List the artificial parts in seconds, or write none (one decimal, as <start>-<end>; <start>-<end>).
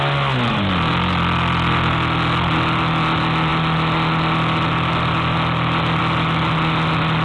none